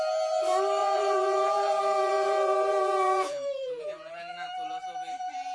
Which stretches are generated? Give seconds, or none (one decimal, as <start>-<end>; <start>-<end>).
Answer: 0.8-4.1